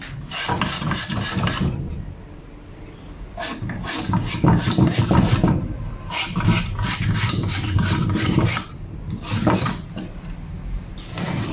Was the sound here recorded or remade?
remade